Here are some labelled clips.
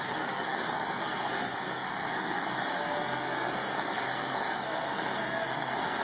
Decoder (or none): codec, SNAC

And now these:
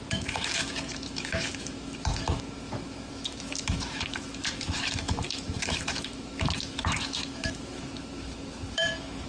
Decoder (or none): autoencoder, DAC-VAE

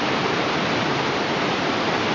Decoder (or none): vocoder, BigVGAN v2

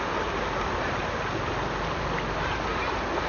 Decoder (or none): none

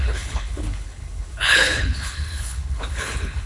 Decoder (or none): codec, HILCodec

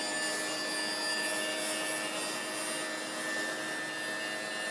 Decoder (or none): none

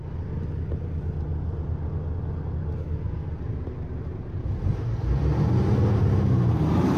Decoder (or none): none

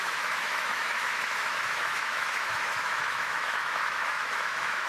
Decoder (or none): autoencoder, DAC-VAE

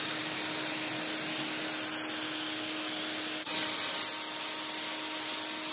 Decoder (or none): none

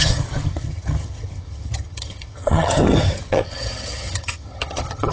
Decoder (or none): vocoder, HiFi-GAN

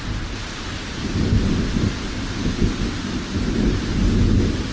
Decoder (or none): none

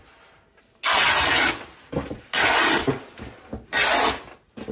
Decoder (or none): none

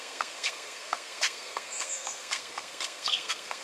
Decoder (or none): codec, SNAC